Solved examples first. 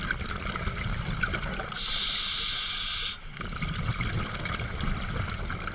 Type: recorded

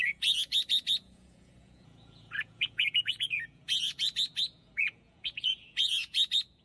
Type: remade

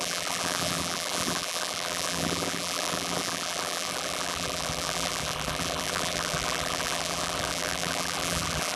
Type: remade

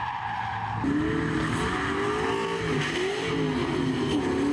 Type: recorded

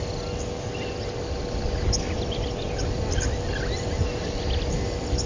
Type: recorded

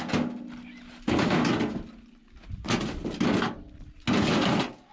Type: recorded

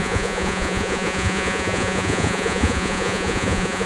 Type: remade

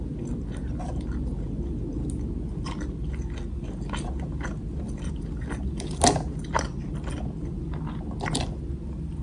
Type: recorded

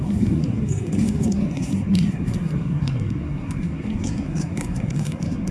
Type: remade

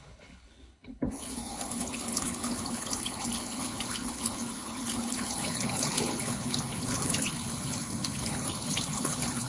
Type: remade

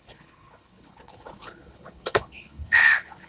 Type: remade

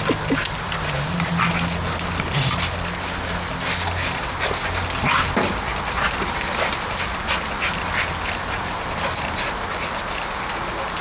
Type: recorded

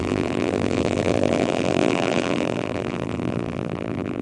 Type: remade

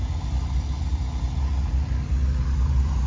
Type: recorded